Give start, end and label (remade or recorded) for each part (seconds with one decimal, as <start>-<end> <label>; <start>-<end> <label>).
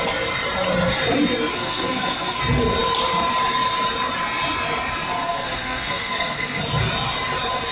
0.0-1.5 recorded; 1.5-2.4 remade; 2.4-5.2 recorded; 5.2-6.6 remade; 6.6-7.7 recorded